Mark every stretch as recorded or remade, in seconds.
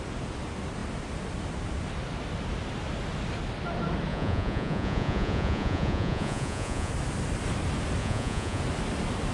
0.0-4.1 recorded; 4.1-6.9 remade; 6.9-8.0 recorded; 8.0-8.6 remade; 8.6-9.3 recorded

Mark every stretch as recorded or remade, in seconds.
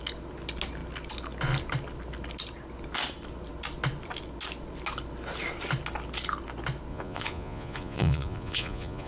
0.0-6.9 recorded; 6.9-9.1 remade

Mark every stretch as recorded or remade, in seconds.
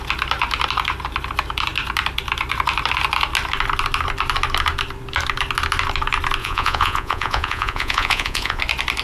0.0-6.4 recorded; 6.4-8.6 remade; 8.6-9.0 recorded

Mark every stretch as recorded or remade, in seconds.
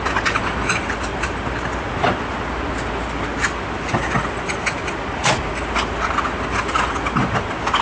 0.0-7.8 recorded